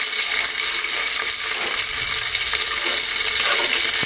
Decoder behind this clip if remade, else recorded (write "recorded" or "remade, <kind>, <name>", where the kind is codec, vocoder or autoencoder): recorded